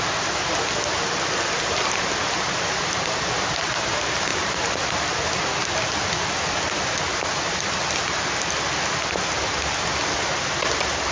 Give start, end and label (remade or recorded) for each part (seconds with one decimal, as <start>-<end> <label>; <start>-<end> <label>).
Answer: 0.0-4.3 recorded; 4.3-8.2 remade; 8.2-11.1 recorded

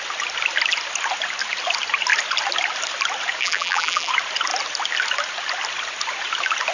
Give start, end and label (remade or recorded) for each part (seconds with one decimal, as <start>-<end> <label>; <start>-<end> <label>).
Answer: 0.0-3.4 recorded; 3.4-4.1 remade; 4.1-6.7 recorded

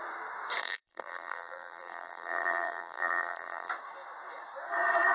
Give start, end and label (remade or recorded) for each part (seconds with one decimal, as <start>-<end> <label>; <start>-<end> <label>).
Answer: 0.0-0.6 recorded; 0.6-3.7 remade; 3.7-5.1 recorded

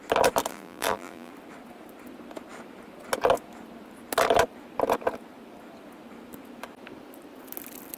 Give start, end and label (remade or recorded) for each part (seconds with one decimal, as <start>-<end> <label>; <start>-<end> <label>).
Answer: 0.0-0.5 recorded; 0.5-1.3 remade; 1.3-8.0 recorded

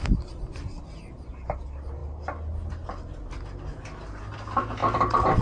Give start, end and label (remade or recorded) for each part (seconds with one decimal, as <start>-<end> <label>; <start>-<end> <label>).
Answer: 0.0-5.4 recorded

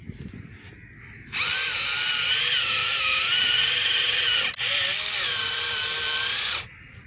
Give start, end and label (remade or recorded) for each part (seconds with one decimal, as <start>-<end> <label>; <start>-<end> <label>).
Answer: 0.0-7.1 recorded

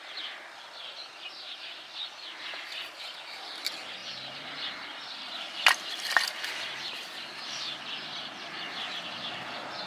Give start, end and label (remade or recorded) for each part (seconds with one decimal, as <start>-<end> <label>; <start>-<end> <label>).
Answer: 0.0-4.0 recorded; 4.0-6.6 remade; 6.6-9.9 recorded

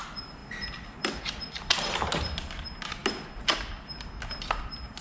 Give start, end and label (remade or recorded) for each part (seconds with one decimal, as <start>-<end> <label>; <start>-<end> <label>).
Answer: 0.0-5.0 recorded